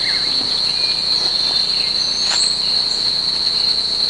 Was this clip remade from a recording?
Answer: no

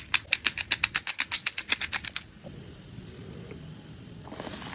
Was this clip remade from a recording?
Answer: no